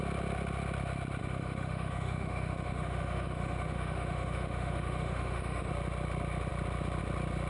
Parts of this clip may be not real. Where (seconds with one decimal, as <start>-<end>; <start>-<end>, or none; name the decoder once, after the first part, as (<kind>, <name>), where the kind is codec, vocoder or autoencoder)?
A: 1.2-5.7 (autoencoder, DAC-VAE)